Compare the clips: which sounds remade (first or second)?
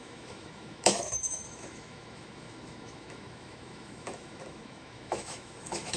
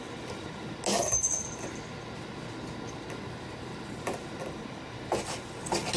first